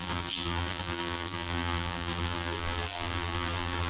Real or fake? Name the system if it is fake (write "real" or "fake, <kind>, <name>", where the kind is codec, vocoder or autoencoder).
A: fake, vocoder, BigVGAN v2